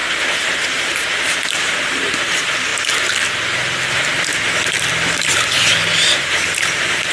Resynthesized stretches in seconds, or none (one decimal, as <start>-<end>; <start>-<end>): 0.9-2.7; 4.9-7.1